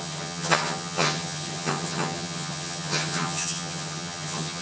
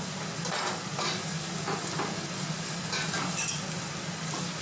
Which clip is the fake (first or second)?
first